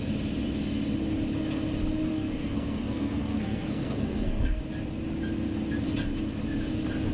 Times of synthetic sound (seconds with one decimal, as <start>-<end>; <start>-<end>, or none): 2.1-4.6